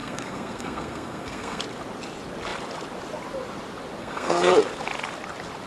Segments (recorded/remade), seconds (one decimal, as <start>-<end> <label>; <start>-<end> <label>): 0.0-1.6 remade; 1.6-4.0 recorded; 4.0-4.5 remade; 4.5-5.7 recorded